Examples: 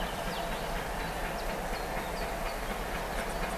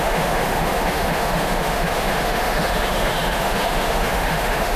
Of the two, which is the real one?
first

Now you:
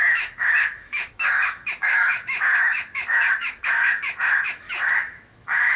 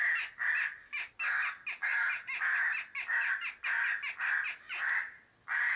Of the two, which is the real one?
second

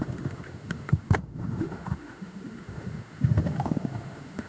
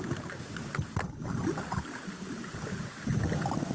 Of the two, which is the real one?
second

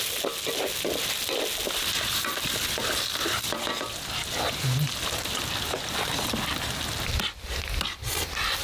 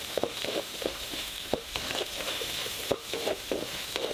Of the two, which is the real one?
first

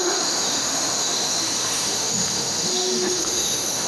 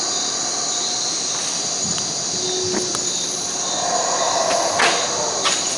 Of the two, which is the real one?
second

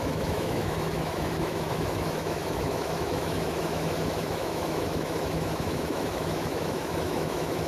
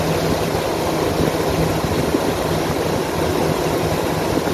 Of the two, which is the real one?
second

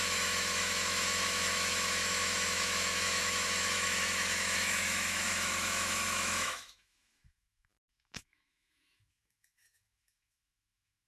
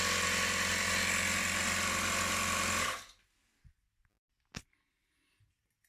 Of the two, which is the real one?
second